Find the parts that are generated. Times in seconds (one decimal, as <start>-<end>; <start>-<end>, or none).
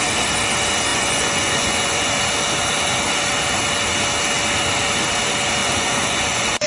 0.9-2.1; 5.6-6.7